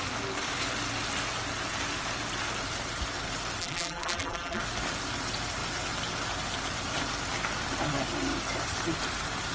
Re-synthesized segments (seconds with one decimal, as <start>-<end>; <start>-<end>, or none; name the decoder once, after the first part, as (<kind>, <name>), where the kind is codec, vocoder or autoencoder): 3.6-4.6 (vocoder, BigVGAN v2)